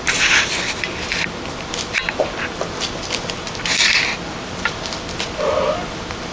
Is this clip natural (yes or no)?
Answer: yes